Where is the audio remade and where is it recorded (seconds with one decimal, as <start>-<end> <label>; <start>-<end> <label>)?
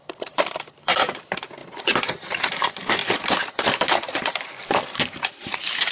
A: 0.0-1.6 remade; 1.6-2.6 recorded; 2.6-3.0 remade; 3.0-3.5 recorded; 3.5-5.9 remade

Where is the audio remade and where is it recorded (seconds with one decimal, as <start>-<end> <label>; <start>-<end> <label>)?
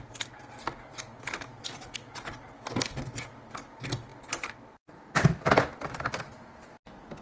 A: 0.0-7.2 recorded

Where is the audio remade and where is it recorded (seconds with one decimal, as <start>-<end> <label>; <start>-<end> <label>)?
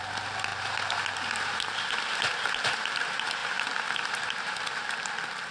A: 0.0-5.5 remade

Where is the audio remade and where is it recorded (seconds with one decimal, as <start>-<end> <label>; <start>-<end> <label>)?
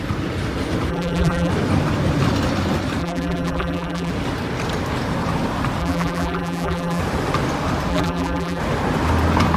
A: 0.0-0.9 recorded; 0.9-1.5 remade; 1.5-3.0 recorded; 3.0-4.1 remade; 4.1-5.8 recorded; 5.8-7.0 remade; 7.0-7.9 recorded; 7.9-8.6 remade; 8.6-9.6 recorded